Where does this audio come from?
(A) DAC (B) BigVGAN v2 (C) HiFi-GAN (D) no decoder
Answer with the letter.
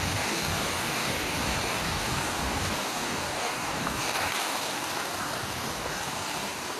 A